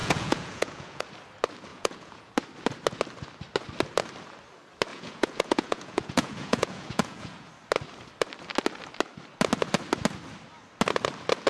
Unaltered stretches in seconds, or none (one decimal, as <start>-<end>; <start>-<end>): 1.0-1.7; 2.3-4.9; 7.5-11.5